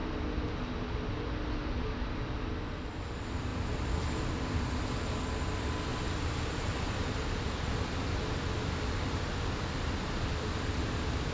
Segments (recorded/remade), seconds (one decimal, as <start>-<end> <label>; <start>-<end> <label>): 0.0-3.5 recorded; 3.5-4.2 remade; 4.2-11.3 recorded

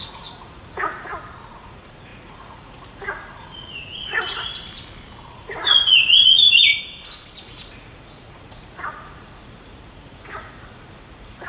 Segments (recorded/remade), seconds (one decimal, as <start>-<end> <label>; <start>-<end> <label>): 0.0-1.1 remade; 1.1-1.6 recorded; 1.6-4.5 remade; 4.5-5.3 recorded; 5.3-6.7 remade; 6.7-7.4 recorded; 7.4-11.5 remade

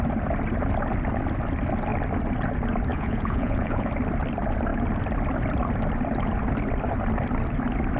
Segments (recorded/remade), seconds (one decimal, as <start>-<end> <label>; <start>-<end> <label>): 0.0-2.9 recorded; 2.9-3.9 remade; 3.9-8.0 recorded

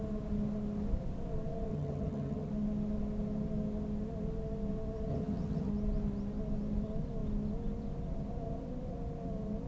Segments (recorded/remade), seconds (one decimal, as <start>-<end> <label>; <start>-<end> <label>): 0.0-1.7 recorded; 1.7-2.5 remade; 2.5-5.1 recorded; 5.1-5.7 remade; 5.7-9.7 recorded

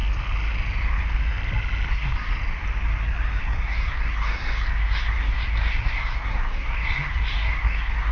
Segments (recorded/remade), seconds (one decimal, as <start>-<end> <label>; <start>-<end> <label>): 0.0-1.9 recorded; 1.9-2.3 remade; 2.3-3.4 recorded; 3.4-8.1 remade

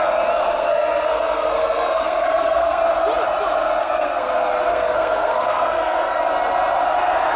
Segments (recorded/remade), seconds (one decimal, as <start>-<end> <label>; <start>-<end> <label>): 0.0-0.4 recorded; 0.4-2.8 remade; 2.8-3.8 recorded; 3.8-4.3 remade; 4.3-4.7 recorded; 4.7-6.2 remade; 6.2-7.4 recorded

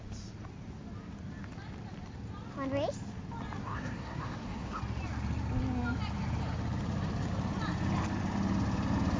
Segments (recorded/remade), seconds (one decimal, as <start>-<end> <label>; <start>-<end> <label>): 0.0-3.6 recorded; 3.6-4.8 remade; 4.8-9.2 recorded